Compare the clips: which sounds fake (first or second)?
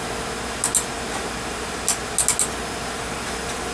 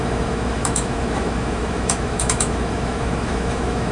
second